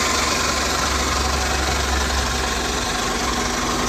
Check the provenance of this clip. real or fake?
real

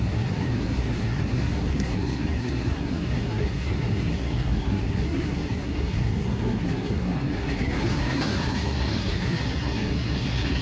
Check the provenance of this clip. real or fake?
fake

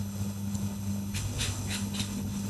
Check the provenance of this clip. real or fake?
fake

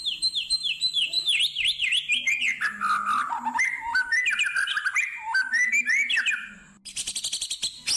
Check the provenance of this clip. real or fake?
real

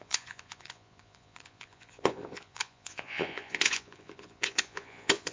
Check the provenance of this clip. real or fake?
fake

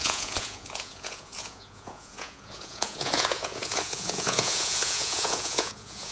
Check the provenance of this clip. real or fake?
fake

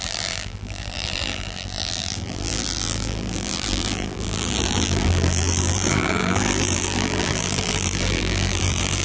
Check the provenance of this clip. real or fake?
fake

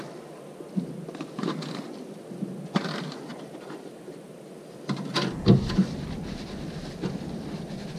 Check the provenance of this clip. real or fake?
real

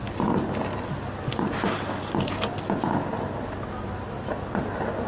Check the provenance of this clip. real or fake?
real